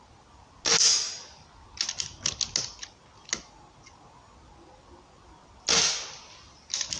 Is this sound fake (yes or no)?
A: no